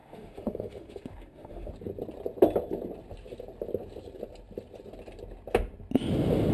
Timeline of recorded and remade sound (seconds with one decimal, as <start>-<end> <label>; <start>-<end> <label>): 0.0-1.7 remade; 1.7-6.5 recorded